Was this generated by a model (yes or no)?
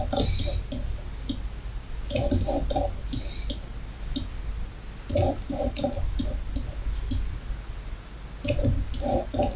no